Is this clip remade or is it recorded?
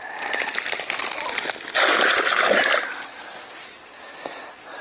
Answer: recorded